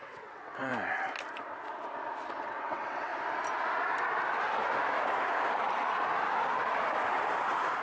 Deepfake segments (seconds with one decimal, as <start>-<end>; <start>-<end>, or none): 0.0-0.7; 2.4-3.1